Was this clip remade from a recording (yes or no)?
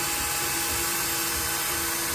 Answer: no